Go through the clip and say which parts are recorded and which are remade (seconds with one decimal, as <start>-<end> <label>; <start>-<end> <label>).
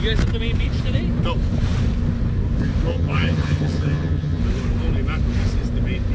0.0-2.9 recorded; 2.9-4.4 remade; 4.4-6.1 recorded